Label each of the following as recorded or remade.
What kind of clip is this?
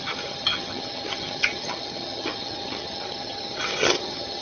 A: remade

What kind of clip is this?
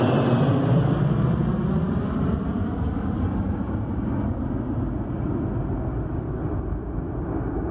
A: recorded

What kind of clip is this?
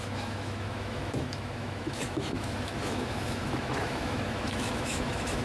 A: remade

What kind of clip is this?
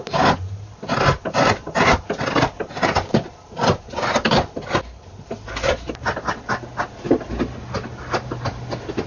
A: recorded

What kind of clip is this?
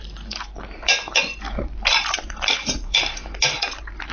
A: remade